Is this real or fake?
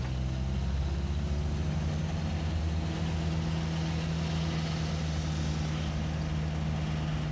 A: real